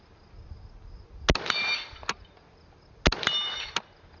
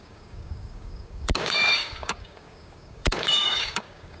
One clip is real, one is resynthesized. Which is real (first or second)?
first